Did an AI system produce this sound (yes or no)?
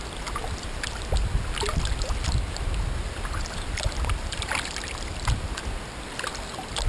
no